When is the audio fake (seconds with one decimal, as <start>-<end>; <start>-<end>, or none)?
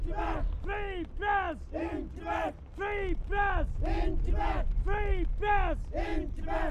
none